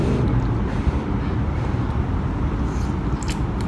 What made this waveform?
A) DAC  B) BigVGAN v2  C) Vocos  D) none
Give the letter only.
D